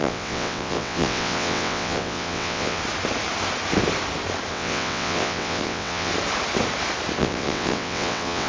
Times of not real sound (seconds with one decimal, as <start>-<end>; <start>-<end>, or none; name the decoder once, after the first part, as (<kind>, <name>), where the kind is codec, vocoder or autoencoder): 0.0-2.8 (vocoder, WaveNeXt); 4.5-6.1; 7.2-8.5